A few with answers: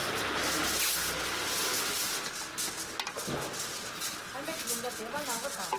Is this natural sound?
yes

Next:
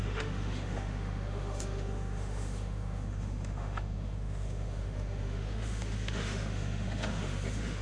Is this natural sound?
no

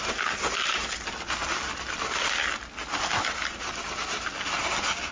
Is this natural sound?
yes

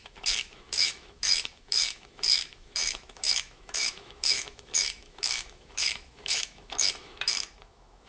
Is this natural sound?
no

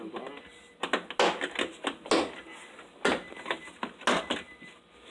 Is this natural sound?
yes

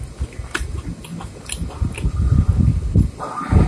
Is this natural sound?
yes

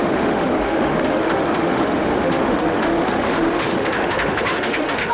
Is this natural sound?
no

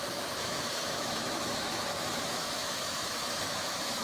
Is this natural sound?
no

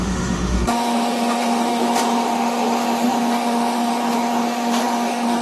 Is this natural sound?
no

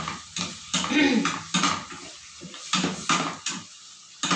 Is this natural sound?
yes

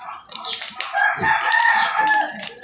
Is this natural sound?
yes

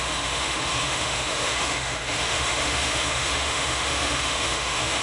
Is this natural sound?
no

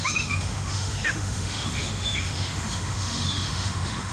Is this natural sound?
no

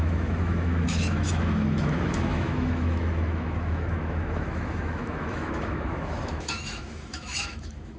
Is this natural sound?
no